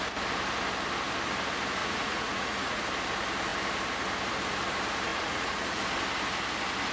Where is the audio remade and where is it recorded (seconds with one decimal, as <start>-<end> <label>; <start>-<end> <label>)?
0.0-1.8 recorded; 1.8-2.8 remade; 2.8-5.1 recorded; 5.1-5.8 remade; 5.8-6.9 recorded